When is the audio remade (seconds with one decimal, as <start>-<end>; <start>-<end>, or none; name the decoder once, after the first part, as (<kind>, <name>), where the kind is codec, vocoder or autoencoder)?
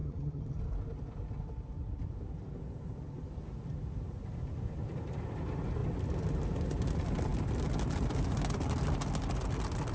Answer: 0.0-0.6 (vocoder, HiFi-GAN)